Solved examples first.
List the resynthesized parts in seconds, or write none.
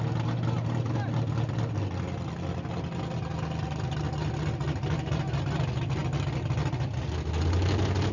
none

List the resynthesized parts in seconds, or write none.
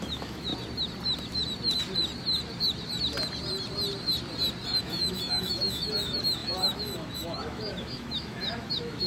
0.0-0.5 (autoencoder, DAC-VAE); 4.8-9.1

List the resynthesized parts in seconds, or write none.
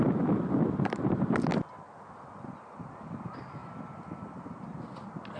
none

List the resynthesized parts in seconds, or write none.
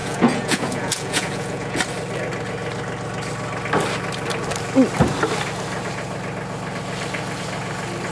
0.0-1.8 (vocoder, Vocos)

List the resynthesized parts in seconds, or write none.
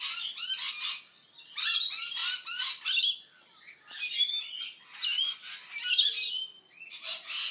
none